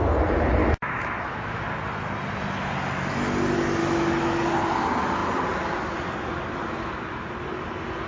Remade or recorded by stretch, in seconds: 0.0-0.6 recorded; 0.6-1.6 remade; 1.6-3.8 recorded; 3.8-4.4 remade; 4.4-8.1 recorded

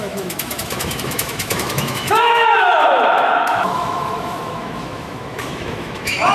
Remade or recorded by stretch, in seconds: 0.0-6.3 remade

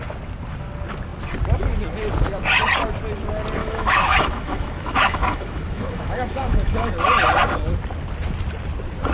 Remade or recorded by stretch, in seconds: 0.0-3.6 recorded; 3.6-6.9 remade; 6.9-9.1 recorded